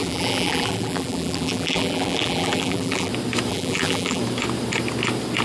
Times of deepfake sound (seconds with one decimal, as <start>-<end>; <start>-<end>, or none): 0.0-3.1; 3.5-4.2